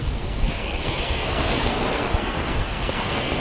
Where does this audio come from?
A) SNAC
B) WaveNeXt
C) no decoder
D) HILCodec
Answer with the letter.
A